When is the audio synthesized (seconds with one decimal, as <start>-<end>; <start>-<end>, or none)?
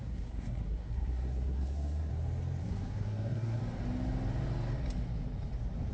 0.0-2.1; 2.6-3.6